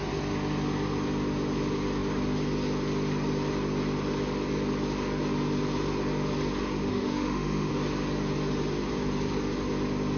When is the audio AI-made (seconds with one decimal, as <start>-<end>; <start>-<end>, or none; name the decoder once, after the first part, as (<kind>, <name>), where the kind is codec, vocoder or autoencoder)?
6.9-7.7 (autoencoder, DAC-VAE)